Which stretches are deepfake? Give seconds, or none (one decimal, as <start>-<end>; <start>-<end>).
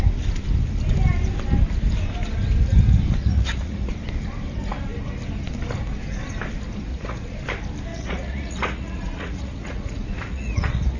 3.2-3.9; 6.9-7.4; 7.9-11.0